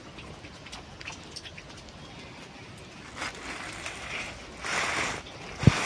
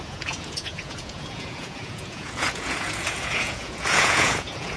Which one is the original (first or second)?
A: first